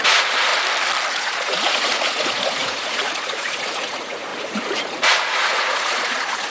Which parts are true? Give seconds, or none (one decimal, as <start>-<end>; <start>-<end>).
0.5-1.1